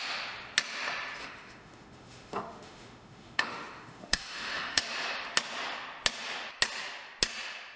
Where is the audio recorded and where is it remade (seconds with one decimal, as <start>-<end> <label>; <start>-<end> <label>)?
0.0-1.2 recorded; 1.2-4.8 remade; 4.8-7.8 recorded